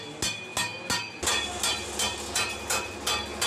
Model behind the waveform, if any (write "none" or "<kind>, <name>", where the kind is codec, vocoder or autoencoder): none